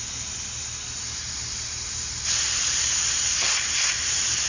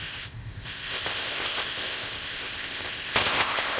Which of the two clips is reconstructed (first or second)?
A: second